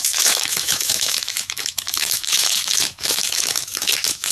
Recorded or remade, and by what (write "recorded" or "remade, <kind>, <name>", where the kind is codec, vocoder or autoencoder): remade, autoencoder, DAC-VAE